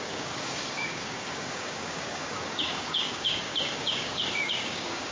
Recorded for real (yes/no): no